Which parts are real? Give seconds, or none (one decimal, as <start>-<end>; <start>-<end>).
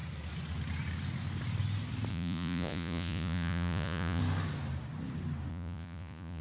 0.0-2.1; 4.2-5.5